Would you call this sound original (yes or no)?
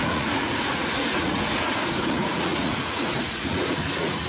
no